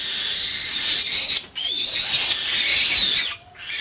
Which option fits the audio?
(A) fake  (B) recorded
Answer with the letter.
B